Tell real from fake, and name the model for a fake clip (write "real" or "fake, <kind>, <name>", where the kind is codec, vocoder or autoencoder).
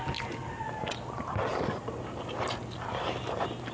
real